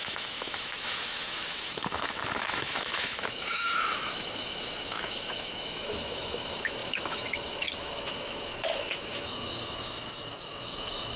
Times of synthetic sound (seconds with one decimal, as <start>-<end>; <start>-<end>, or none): 0.0-11.2